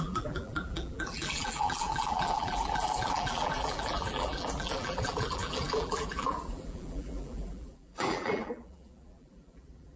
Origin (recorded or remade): remade